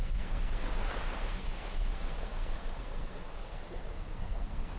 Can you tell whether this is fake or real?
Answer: fake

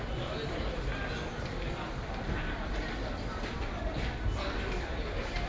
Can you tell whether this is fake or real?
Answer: real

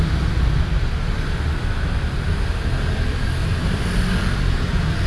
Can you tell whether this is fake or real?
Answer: real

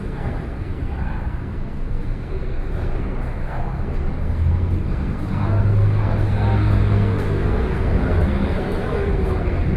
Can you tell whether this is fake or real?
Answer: fake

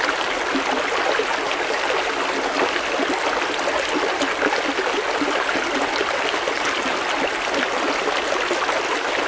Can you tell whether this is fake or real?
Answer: real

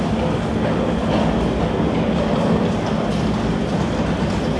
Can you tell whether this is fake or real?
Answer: real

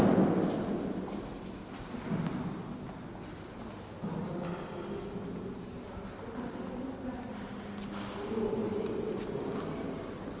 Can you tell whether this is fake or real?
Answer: real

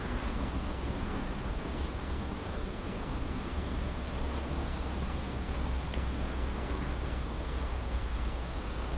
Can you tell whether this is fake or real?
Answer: fake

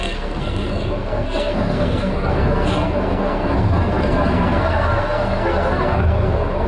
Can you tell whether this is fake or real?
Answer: fake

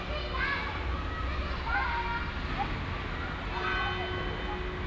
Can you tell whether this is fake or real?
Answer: real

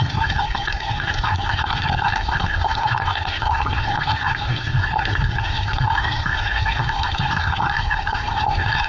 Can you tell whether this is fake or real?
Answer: fake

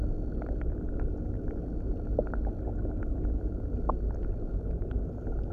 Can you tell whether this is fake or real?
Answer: real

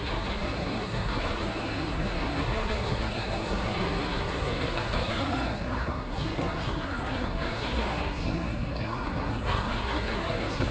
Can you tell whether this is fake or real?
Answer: fake